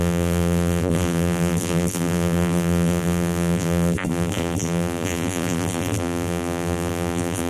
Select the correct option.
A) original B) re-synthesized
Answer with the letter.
B